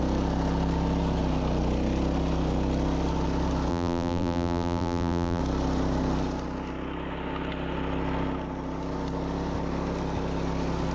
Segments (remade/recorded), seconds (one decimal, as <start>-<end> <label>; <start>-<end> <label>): 0.0-3.7 recorded; 3.7-5.4 remade; 5.4-10.9 recorded